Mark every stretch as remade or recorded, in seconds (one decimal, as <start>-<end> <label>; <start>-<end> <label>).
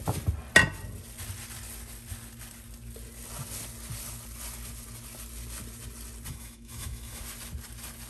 0.0-6.3 recorded; 6.3-7.2 remade; 7.2-8.1 recorded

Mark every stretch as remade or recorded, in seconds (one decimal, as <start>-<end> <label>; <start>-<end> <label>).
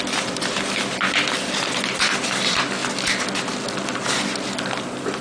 0.0-2.8 remade; 2.8-4.7 recorded; 4.7-5.2 remade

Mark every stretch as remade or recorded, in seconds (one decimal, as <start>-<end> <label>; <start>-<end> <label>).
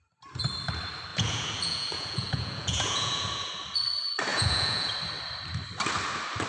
0.0-1.1 recorded; 1.1-3.5 remade; 3.5-4.3 recorded; 4.3-4.9 remade; 4.9-6.5 recorded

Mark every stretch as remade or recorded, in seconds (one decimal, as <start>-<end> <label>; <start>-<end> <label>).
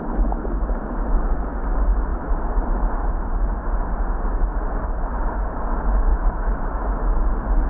0.0-6.1 recorded; 6.1-7.0 remade; 7.0-7.7 recorded